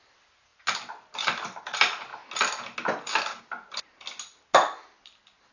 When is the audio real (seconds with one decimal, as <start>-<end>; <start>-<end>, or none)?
0.0-5.5